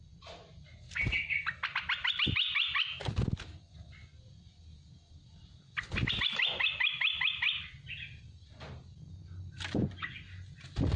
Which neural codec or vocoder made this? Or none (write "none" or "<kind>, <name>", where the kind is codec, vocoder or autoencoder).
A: none